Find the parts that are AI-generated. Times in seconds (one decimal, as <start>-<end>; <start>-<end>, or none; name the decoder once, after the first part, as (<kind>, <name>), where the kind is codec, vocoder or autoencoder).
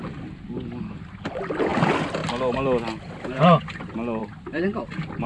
4.2-4.8 (vocoder, BigVGAN v2)